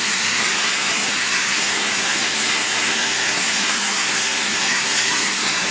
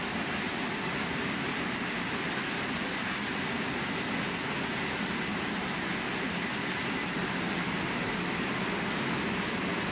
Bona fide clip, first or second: second